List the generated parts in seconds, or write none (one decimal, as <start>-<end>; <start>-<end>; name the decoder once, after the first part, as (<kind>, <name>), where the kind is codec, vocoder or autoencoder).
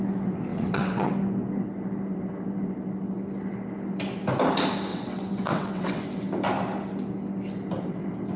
0.5-1.1 (vocoder, WaveNeXt); 4.9-6.0